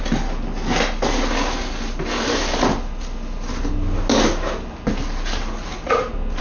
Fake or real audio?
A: real